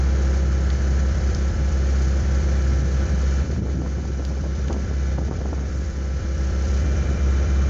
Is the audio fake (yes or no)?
yes